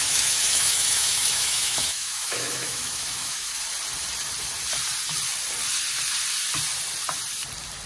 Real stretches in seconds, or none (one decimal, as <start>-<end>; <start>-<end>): 3.5-7.9

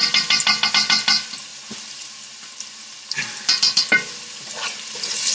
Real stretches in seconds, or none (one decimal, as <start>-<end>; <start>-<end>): 0.0-5.3

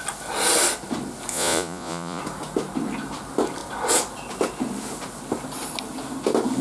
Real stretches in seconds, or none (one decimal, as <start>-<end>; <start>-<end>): 0.0-1.3; 2.2-6.6

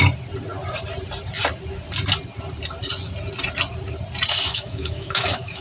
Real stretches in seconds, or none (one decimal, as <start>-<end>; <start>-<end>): 0.0-4.5

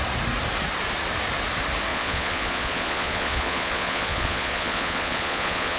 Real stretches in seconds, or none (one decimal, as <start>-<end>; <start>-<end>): 0.0-1.9

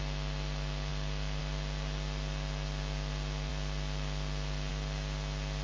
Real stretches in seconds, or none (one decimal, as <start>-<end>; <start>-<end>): 0.0-5.6

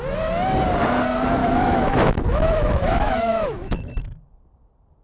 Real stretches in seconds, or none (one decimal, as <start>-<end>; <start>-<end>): 0.0-1.4; 3.9-5.0

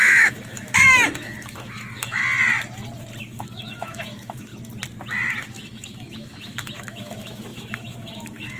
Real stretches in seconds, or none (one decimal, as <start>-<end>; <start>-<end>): 2.2-3.2; 4.5-5.4